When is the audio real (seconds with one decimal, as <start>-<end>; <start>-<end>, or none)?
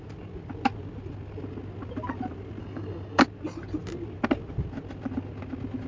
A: 0.0-2.6; 3.2-5.9